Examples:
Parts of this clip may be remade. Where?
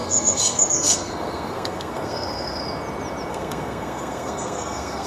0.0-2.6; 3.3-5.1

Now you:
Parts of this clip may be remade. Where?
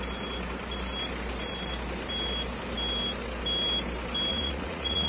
4.3-5.1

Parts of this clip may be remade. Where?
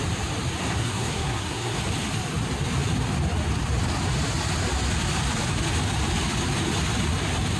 0.6-1.8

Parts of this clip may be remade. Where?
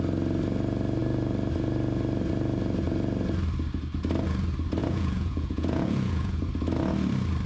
4.8-6.4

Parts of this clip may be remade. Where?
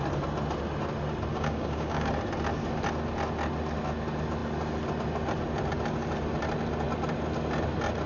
1.3-2.1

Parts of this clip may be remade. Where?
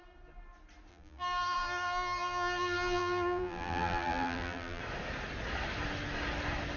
0.9-4.8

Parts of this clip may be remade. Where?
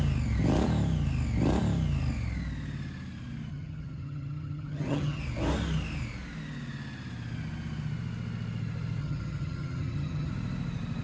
3.5-5.2; 9.0-10.3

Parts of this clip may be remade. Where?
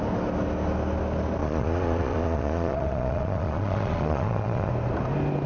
1.4-4.7